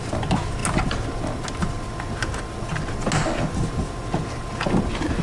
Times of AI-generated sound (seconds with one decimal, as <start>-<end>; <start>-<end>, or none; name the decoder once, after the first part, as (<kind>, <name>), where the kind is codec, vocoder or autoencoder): none